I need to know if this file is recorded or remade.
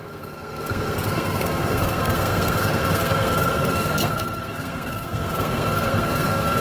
remade